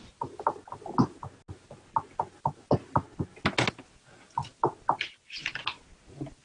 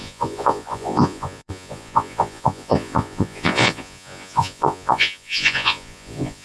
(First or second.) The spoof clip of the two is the second